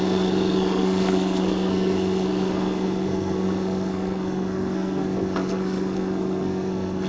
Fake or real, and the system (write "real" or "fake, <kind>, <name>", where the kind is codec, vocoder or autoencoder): fake, codec, SNAC